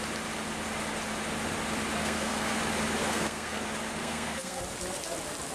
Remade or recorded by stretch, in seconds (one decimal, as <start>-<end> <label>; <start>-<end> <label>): 0.0-2.0 recorded; 2.0-2.6 remade; 2.6-3.0 recorded; 3.0-3.6 remade; 3.6-4.0 recorded; 4.0-4.6 remade; 4.6-5.5 recorded